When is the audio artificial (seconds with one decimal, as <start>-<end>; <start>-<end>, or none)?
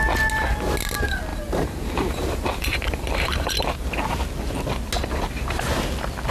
1.3-4.3